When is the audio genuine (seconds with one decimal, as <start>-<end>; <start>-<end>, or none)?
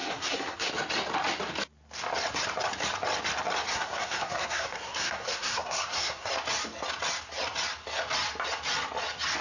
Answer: 0.7-3.7; 6.3-9.4